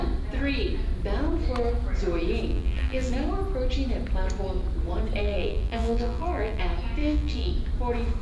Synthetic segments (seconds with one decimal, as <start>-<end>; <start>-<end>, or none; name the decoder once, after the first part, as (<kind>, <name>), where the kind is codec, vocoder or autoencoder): 2.5-3.1 (vocoder, BigVGAN v2); 5.2-6.6; 7.0-7.5